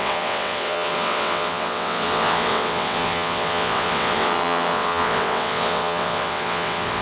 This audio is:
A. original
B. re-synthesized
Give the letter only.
B